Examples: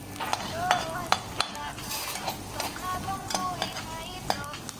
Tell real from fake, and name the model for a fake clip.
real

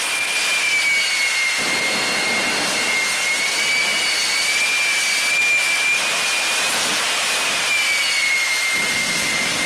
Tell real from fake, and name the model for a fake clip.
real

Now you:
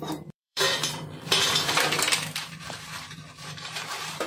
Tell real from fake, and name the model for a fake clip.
fake, vocoder, BigVGAN v2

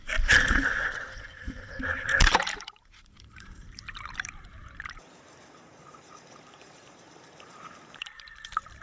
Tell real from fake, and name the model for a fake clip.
fake, vocoder, BigVGAN v2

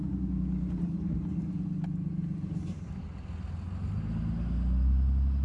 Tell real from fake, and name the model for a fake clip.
real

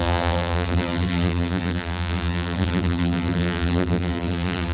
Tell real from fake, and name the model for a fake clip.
fake, vocoder, BigVGAN v2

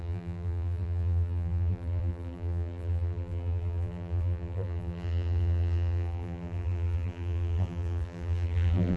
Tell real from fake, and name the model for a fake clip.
fake, vocoder, BigVGAN v2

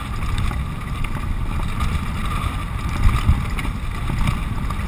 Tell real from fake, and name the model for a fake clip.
real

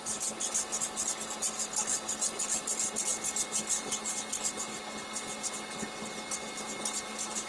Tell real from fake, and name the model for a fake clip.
real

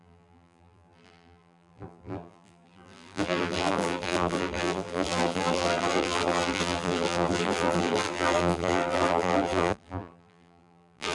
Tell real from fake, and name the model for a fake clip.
fake, vocoder, BigVGAN v2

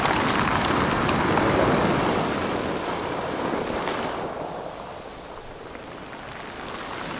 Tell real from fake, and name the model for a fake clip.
real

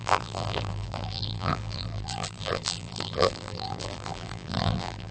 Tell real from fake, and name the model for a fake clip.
fake, vocoder, BigVGAN v2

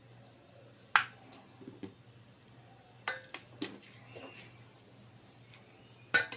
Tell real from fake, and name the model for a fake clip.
real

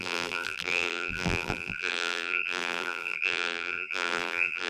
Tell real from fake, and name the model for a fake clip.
fake, vocoder, BigVGAN v2